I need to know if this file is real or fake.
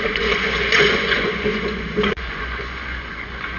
fake